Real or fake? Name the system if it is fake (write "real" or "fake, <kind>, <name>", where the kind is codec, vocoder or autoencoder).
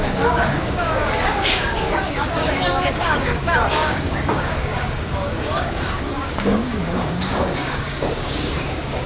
fake, codec, DAC